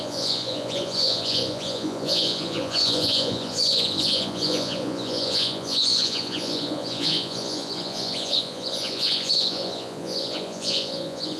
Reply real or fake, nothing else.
fake